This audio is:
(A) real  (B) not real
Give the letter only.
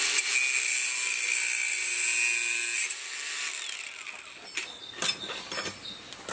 A